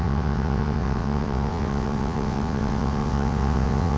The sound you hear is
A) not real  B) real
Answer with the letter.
A